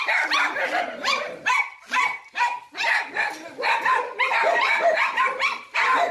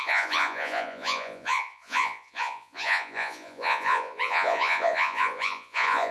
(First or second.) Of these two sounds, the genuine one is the first